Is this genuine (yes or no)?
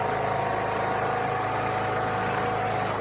yes